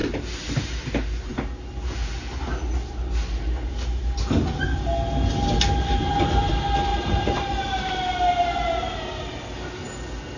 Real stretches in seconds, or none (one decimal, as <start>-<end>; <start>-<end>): 0.9-6.9; 7.9-10.4